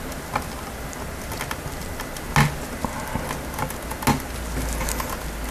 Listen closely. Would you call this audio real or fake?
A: real